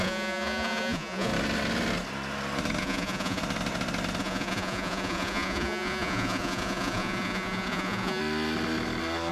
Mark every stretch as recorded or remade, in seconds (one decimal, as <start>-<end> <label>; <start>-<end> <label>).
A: 0.0-1.3 remade; 1.3-2.8 recorded; 2.8-3.4 remade; 3.4-4.2 recorded; 4.2-8.2 remade; 8.2-9.3 recorded